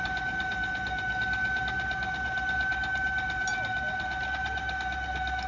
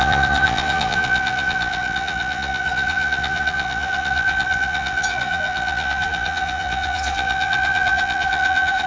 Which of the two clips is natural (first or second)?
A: first